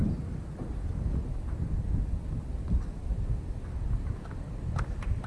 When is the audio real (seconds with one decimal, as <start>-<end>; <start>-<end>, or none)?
0.0-5.3